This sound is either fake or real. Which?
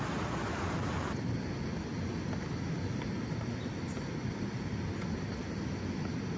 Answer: real